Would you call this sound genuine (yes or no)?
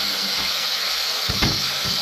no